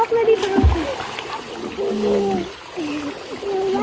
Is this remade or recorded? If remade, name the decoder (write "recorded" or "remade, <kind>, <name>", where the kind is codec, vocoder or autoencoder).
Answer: recorded